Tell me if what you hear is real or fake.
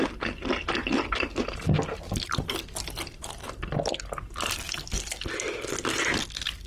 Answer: real